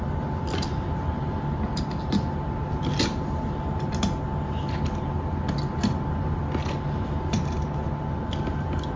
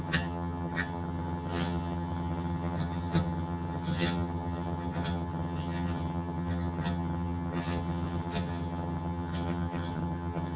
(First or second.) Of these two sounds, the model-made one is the second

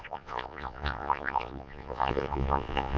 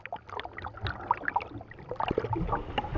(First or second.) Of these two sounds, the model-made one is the first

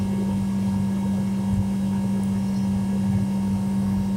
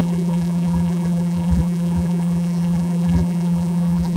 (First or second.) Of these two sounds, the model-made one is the second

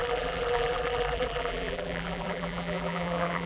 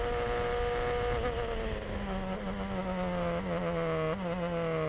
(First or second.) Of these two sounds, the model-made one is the first